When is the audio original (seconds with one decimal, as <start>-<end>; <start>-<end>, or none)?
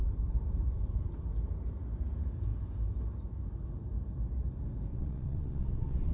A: 0.0-4.9